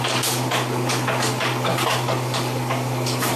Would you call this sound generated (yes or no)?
yes